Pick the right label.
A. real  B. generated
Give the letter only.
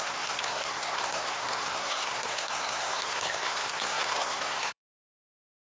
B